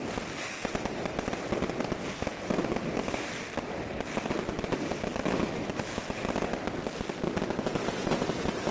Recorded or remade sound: recorded